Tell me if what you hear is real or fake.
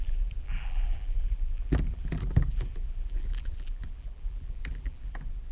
fake